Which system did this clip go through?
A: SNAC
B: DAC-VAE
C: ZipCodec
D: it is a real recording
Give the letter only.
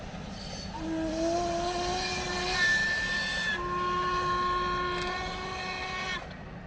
D